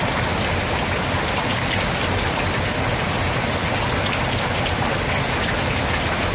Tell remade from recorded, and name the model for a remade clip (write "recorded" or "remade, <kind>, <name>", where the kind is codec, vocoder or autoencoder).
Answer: recorded